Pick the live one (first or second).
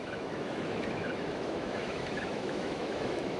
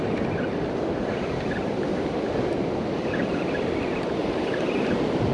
second